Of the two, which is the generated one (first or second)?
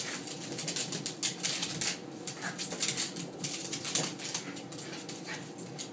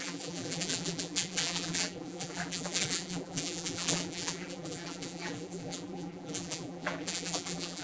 second